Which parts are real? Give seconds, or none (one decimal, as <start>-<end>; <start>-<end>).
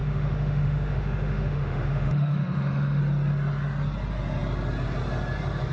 3.0-5.7